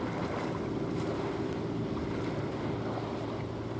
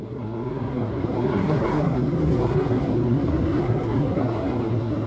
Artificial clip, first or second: second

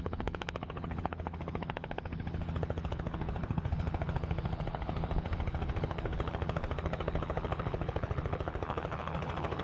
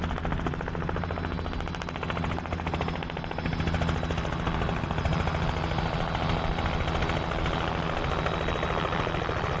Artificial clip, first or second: first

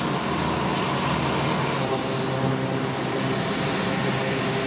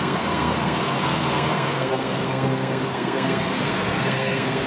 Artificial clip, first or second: second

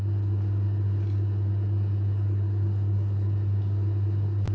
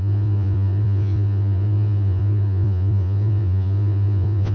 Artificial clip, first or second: second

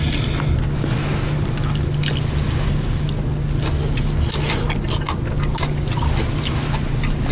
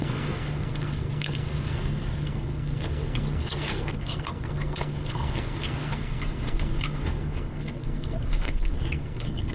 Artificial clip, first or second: second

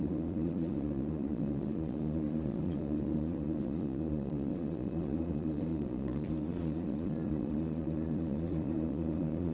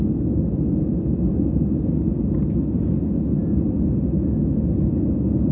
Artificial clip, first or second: first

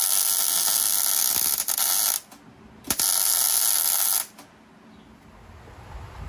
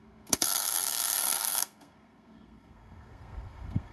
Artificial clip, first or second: second